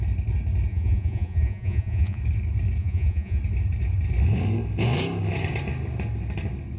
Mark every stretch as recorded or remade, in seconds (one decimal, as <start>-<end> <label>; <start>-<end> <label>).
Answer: 0.0-0.7 recorded; 0.7-2.2 remade; 2.2-2.8 recorded; 2.8-3.4 remade; 3.4-6.8 recorded